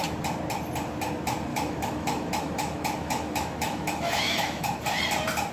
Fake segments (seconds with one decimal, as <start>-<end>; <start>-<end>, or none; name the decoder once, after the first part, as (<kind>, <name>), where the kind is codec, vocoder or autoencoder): 1.5-4.8 (autoencoder, DAC-VAE)